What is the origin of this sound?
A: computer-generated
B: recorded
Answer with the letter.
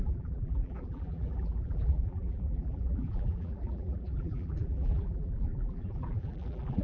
A